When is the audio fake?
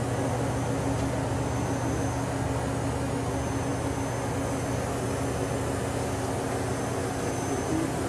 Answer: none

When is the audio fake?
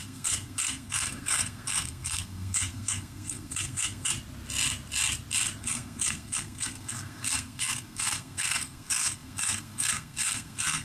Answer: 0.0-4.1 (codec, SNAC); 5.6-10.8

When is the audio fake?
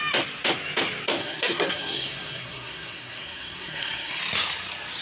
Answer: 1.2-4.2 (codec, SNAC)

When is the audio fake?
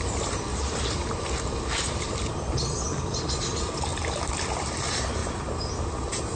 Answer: 0.0-0.5 (vocoder, BigVGAN v2); 1.6-3.9; 4.5-5.2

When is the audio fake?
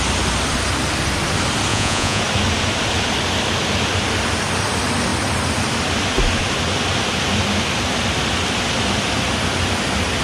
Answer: 1.7-2.2 (vocoder, Vocos)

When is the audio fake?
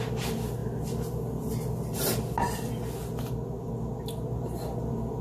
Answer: none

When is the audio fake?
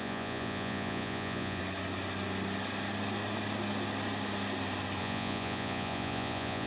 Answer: 0.0-1.6 (vocoder, Vocos); 5.0-6.7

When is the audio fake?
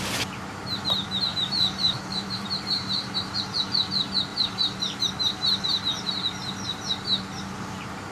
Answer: 1.3-3.4 (vocoder, BigVGAN v2); 4.3-6.1